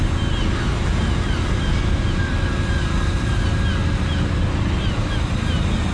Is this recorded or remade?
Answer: recorded